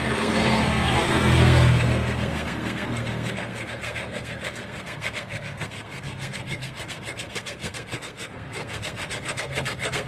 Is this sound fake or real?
fake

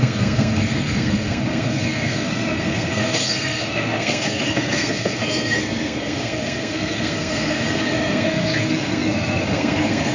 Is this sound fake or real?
fake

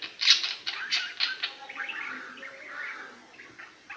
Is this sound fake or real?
real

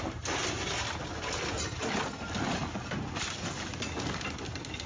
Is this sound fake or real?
real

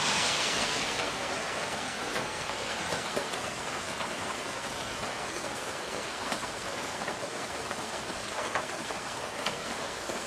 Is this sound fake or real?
fake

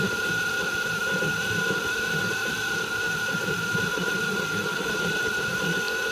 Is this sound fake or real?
real